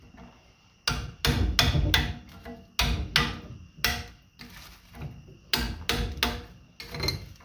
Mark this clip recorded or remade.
recorded